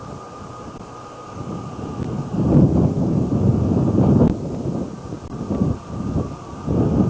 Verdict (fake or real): real